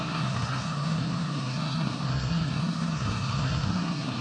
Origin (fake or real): fake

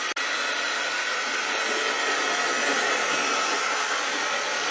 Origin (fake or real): real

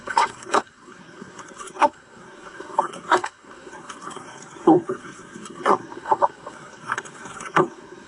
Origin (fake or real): fake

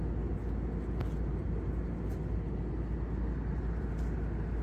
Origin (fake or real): real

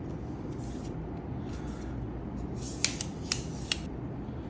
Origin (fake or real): real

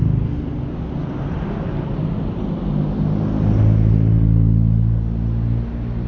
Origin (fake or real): real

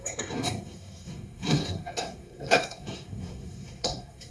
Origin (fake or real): fake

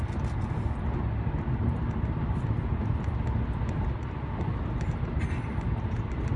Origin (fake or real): real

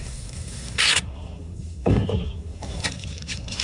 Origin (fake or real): fake